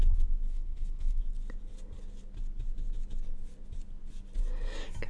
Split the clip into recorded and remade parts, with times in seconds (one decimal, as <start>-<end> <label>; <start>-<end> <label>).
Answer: 0.0-0.5 recorded; 0.5-1.2 remade; 1.2-5.1 recorded